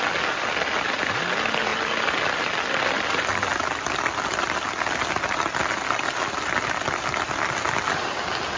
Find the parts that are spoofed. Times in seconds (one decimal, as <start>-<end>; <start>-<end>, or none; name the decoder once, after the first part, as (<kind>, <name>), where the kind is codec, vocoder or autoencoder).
none